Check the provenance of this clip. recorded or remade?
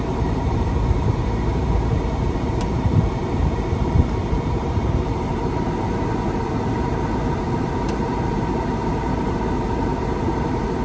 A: remade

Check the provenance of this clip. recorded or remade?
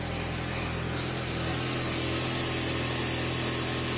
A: recorded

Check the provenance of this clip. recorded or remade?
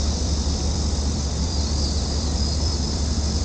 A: remade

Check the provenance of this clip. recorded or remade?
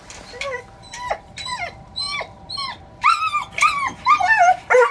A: remade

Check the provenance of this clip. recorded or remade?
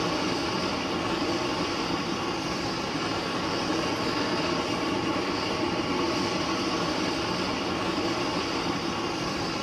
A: remade